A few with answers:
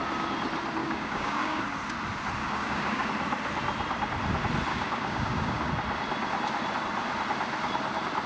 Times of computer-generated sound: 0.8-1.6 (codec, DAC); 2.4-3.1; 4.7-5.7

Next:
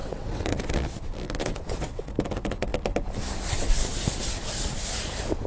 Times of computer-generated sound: 0.0-0.6 (vocoder, WaveNeXt); 1.4-2.1